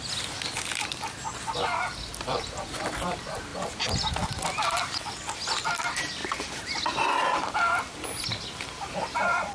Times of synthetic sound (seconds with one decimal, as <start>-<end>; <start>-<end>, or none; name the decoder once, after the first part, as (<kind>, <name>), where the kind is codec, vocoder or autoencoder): none